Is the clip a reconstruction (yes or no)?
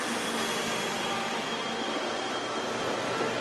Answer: no